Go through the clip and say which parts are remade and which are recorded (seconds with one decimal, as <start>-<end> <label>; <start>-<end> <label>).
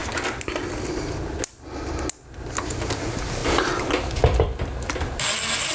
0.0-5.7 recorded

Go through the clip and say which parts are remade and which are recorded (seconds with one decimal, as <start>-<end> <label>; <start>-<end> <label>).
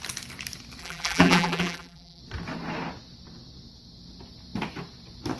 0.0-0.8 recorded; 0.8-2.2 remade; 2.2-5.4 recorded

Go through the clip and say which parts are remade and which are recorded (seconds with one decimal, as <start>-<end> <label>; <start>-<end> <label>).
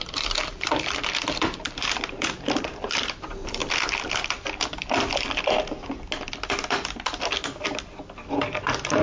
0.0-3.6 remade; 3.6-8.3 recorded; 8.3-9.0 remade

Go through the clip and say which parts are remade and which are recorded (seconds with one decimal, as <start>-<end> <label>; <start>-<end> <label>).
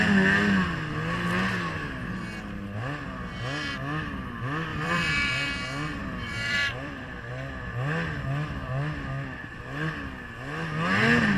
0.0-4.7 recorded; 4.7-5.5 remade; 5.5-6.0 recorded; 6.0-7.3 remade; 7.3-11.4 recorded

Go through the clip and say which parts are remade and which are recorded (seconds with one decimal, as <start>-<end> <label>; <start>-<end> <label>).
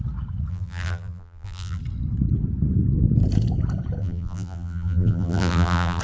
0.0-0.5 recorded; 0.5-1.8 remade; 1.8-4.0 recorded; 4.0-6.0 remade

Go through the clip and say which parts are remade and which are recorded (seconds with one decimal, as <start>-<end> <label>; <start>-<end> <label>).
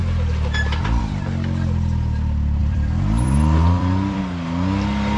0.0-2.6 recorded; 2.6-4.2 remade; 4.2-5.2 recorded